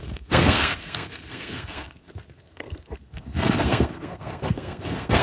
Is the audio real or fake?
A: fake